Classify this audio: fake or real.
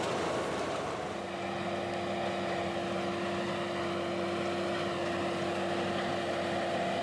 real